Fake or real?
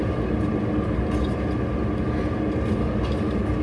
real